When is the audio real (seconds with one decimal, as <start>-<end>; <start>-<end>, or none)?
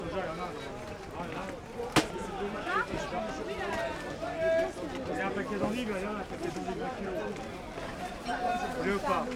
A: 0.0-7.9; 8.8-9.4